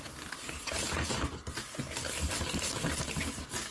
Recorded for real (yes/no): yes